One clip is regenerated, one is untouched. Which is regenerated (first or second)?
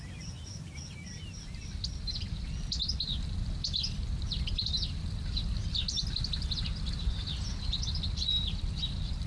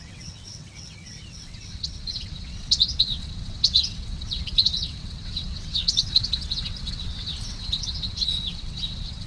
second